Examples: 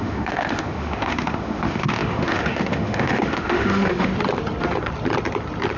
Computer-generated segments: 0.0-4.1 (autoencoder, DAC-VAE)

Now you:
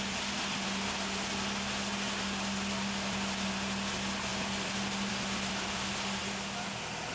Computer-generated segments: none

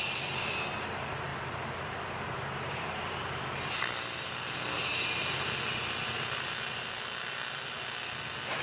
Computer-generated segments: none

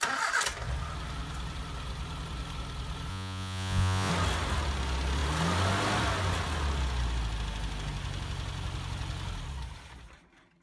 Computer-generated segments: 3.1-4.1 (vocoder, Vocos)

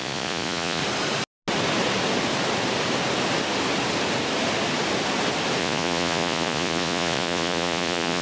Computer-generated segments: 0.0-0.8 (vocoder, Vocos); 5.6-8.2